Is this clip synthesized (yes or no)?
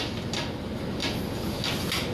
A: no